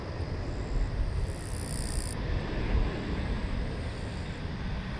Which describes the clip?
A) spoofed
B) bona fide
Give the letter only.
B